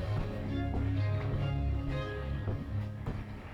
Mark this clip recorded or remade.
remade